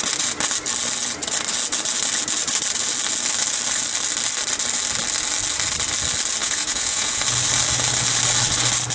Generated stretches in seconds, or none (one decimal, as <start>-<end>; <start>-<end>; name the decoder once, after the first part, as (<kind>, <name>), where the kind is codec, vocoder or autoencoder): 6.4-7.2 (vocoder, Vocos)